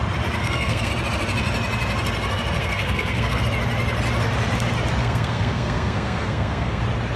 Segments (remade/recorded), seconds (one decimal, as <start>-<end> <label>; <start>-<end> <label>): 0.0-0.4 recorded; 0.4-0.9 remade; 0.9-2.6 recorded; 2.6-3.4 remade; 3.4-5.0 recorded; 5.0-6.8 remade; 6.8-7.2 recorded